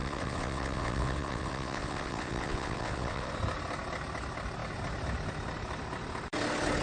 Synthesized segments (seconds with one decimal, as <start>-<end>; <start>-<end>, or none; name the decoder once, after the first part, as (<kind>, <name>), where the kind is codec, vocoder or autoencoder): 0.0-3.3 (vocoder, WaveNeXt)